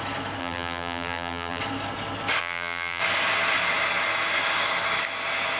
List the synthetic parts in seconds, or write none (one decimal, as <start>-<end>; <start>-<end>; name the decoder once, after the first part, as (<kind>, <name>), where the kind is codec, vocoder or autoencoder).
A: 0.4-1.6 (vocoder, BigVGAN v2); 2.4-3.0